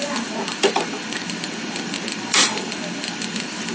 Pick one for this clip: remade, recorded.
remade